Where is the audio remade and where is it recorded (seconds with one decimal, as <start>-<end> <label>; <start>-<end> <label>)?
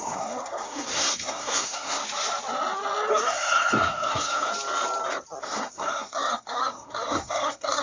0.0-2.0 remade; 2.0-3.1 recorded; 3.1-4.5 remade; 4.5-5.4 recorded; 5.4-7.8 remade